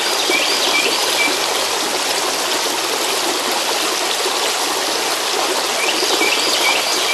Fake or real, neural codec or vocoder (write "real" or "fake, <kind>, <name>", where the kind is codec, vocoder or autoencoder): real